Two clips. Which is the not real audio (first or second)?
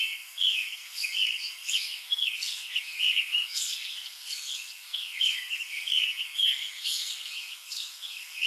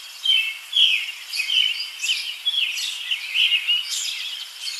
first